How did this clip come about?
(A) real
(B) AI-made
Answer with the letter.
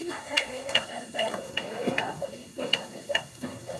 B